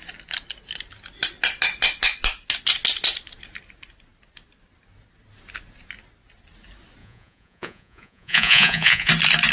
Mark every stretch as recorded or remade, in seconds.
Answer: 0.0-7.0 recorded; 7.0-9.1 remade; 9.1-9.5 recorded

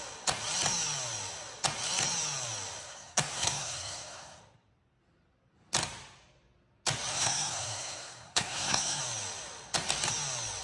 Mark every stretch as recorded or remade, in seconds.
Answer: 0.0-2.8 recorded; 2.8-4.4 remade; 4.4-7.1 recorded; 7.1-9.0 remade; 9.0-10.6 recorded